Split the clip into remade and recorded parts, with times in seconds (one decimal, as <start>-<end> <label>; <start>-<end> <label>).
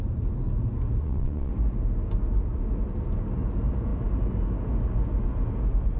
0.0-1.0 recorded; 1.0-1.5 remade; 1.5-6.0 recorded